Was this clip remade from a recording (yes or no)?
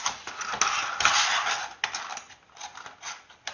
no